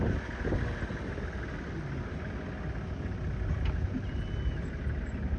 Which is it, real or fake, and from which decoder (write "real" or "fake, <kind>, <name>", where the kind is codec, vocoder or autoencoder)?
real